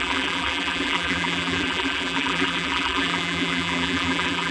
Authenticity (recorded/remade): remade